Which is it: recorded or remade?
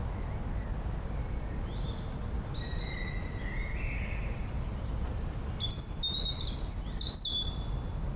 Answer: recorded